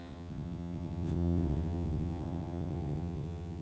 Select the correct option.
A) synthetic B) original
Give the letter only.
A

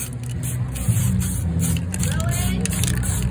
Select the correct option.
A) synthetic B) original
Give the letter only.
B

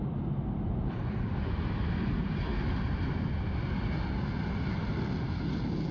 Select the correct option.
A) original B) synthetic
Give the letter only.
A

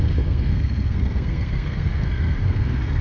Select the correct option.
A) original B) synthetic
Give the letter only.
B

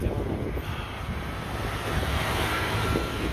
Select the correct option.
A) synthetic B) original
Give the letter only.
B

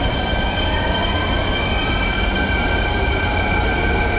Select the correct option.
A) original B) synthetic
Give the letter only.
A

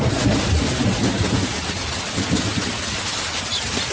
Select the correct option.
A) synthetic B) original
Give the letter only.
B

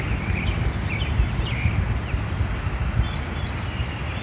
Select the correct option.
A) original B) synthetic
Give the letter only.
A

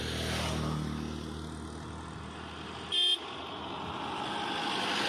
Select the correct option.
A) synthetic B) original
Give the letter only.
B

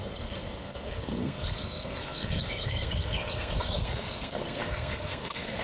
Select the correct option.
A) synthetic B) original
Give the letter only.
A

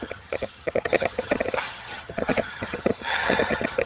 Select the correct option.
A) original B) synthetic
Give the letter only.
B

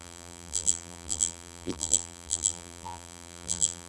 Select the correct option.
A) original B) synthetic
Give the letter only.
B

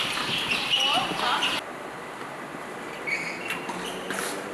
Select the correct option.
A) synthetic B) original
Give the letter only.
B